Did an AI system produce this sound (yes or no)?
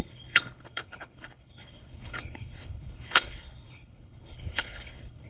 yes